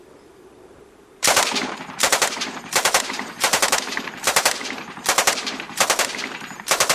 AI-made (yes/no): yes